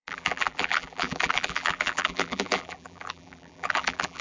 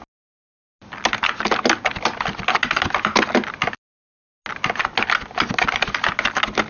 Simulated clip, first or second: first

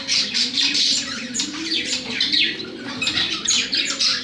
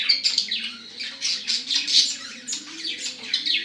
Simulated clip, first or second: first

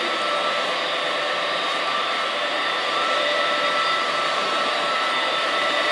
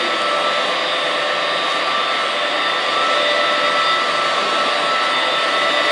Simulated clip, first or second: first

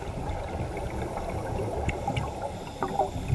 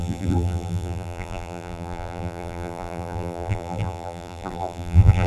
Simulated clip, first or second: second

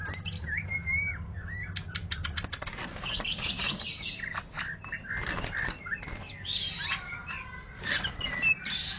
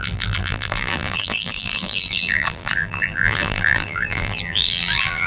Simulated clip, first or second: second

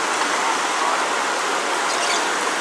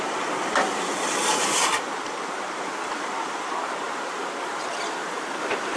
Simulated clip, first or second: second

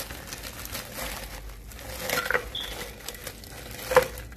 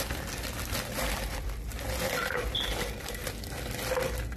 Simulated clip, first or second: second